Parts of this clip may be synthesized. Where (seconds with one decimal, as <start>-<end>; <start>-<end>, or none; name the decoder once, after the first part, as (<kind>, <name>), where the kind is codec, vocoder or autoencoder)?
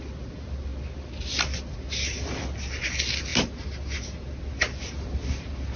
none